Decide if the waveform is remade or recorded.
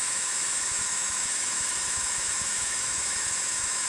remade